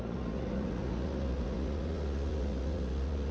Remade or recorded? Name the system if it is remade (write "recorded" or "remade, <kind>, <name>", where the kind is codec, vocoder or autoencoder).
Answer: remade, vocoder, Vocos